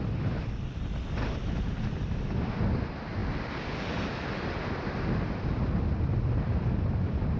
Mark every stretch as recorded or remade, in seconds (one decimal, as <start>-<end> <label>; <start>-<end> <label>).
0.0-7.4 recorded